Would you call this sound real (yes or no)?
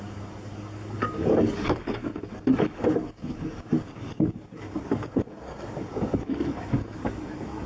no